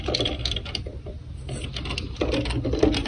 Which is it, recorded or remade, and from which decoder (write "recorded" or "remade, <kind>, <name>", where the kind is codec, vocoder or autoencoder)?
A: recorded